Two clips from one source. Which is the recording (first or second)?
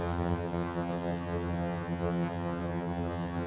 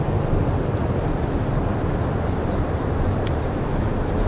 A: second